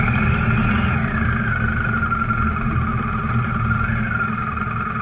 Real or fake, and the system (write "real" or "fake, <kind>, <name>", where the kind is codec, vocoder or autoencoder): real